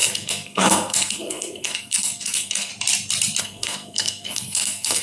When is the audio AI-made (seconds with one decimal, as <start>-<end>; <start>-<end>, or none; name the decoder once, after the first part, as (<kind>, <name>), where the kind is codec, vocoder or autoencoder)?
0.0-2.7 (codec, SNAC); 3.4-5.0